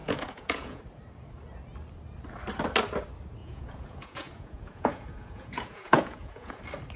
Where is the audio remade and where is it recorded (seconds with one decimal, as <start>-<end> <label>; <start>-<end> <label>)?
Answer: 0.0-0.8 remade; 0.8-3.4 recorded; 3.4-6.6 remade; 6.6-7.0 recorded